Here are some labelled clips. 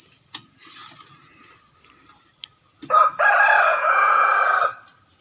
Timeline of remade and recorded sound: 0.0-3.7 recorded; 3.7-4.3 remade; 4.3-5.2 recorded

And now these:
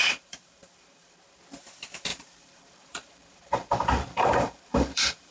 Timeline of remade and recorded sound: 0.0-1.4 remade; 1.4-2.1 recorded; 2.1-5.3 remade

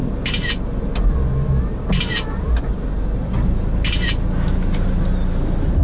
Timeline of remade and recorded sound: 0.0-5.8 recorded

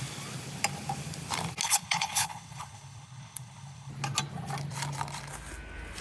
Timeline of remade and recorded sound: 0.0-1.6 recorded; 1.6-3.9 remade; 3.9-6.0 recorded

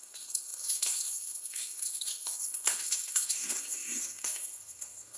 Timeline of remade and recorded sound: 0.0-5.2 remade

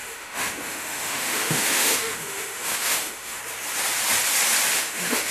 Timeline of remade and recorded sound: 0.0-3.4 remade; 3.4-4.8 recorded; 4.8-5.3 remade

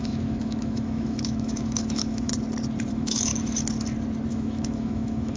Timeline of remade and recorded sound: 0.0-2.3 remade; 2.3-2.9 recorded; 2.9-3.3 remade; 3.3-4.3 recorded; 4.3-5.4 remade

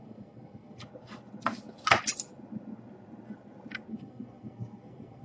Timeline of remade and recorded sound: 0.0-0.8 remade; 0.8-3.9 recorded; 3.9-5.2 remade